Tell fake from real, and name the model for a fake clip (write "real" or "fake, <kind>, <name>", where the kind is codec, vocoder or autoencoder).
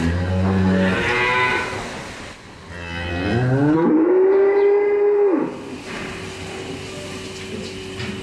real